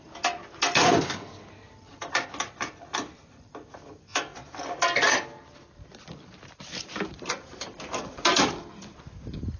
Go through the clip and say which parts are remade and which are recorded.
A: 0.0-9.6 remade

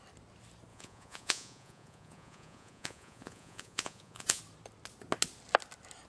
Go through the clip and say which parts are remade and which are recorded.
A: 0.0-0.7 recorded; 0.7-4.4 remade; 4.4-6.1 recorded

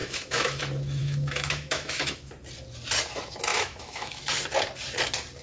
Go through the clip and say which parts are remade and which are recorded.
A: 0.0-0.6 remade; 0.6-1.0 recorded; 1.0-2.3 remade; 2.3-3.5 recorded; 3.5-4.2 remade; 4.2-5.4 recorded

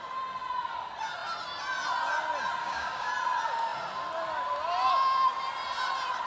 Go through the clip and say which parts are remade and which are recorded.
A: 0.0-2.6 recorded; 2.6-3.1 remade; 3.1-6.3 recorded

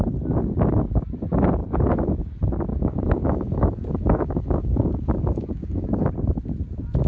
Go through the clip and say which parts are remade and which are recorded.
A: 0.0-2.7 recorded; 2.7-6.1 remade; 6.1-7.1 recorded

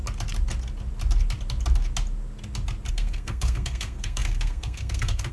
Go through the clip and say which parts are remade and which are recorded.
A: 0.0-2.9 recorded; 2.9-5.3 remade

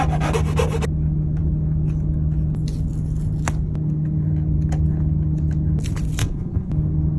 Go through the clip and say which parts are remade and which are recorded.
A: 0.0-6.2 recorded; 6.2-6.7 remade; 6.7-7.2 recorded

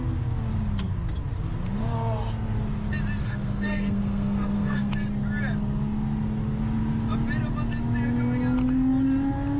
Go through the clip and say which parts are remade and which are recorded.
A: 0.0-3.2 recorded; 3.2-4.9 remade; 4.9-9.6 recorded